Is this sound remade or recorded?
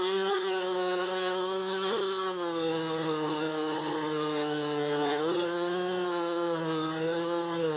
remade